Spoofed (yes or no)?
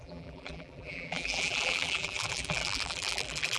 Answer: yes